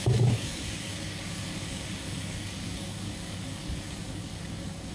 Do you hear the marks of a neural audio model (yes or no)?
yes